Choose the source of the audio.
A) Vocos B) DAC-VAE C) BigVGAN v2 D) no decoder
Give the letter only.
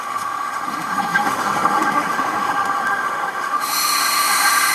B